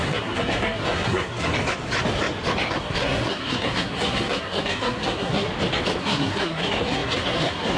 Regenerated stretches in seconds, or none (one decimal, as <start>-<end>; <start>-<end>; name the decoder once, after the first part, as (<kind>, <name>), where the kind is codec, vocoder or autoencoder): 0.0-1.5 (codec, SNAC); 2.7-5.5; 6.0-7.8